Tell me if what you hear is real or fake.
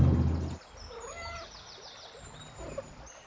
real